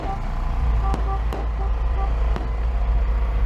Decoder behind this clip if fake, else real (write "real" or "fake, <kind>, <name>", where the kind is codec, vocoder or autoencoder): real